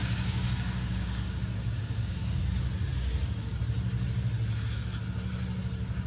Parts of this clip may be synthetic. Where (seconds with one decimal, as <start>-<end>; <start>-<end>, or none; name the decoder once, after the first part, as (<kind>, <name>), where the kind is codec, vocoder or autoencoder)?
0.0-2.4 (codec, DAC)